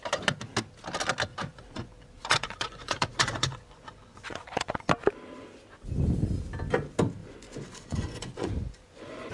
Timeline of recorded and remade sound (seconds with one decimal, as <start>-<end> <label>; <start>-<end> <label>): 0.0-1.3 recorded; 1.3-4.9 remade; 4.9-7.2 recorded; 7.2-9.3 remade